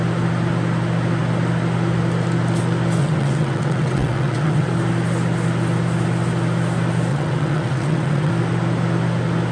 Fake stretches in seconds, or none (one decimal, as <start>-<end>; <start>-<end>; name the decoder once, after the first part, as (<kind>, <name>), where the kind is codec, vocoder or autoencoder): 3.0-4.7 (vocoder, WaveNeXt); 7.1-8.3